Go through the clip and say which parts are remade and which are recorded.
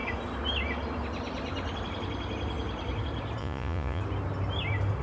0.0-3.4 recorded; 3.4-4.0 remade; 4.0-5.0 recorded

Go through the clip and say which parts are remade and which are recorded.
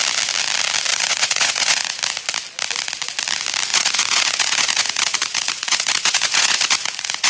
0.0-0.9 recorded; 0.9-2.0 remade; 2.0-3.7 recorded; 3.7-7.3 remade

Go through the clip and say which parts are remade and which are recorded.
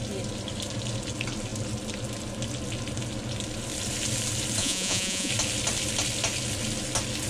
0.0-4.6 recorded; 4.6-5.3 remade; 5.3-7.3 recorded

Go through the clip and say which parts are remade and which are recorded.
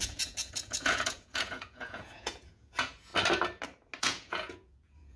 0.0-3.1 remade; 3.1-4.0 recorded; 4.0-5.2 remade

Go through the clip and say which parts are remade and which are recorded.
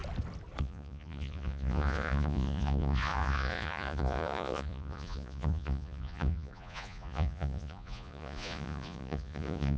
0.0-0.6 recorded; 0.6-9.8 remade